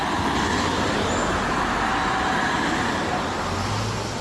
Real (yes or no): yes